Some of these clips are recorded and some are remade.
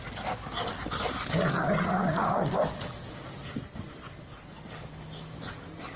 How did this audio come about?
recorded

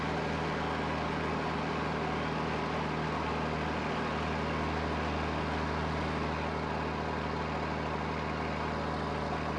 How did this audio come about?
recorded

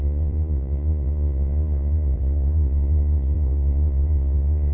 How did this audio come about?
remade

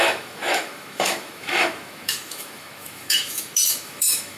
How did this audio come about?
remade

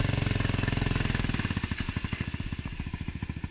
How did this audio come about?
remade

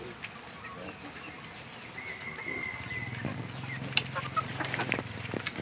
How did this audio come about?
recorded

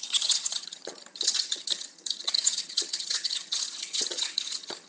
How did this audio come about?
remade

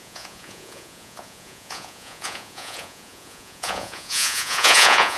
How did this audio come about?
remade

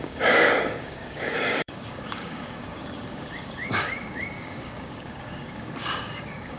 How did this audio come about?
remade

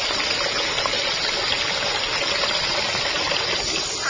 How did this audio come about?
recorded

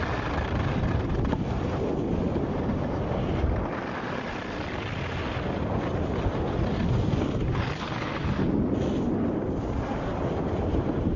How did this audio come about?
recorded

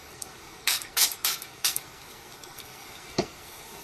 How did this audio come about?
remade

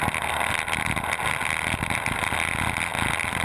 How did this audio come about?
recorded